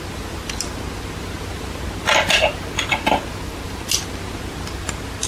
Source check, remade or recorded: recorded